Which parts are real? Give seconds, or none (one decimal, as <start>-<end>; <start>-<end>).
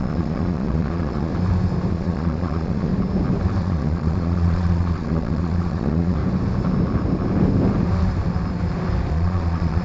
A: 1.3-1.9; 2.9-3.6; 6.2-9.1